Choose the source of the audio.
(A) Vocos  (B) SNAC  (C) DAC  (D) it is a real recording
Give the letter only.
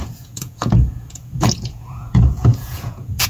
A